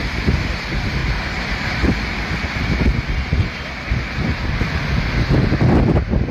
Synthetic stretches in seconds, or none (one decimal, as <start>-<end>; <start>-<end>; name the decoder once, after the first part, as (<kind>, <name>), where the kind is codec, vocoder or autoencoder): 0.0-2.1 (vocoder, BigVGAN v2)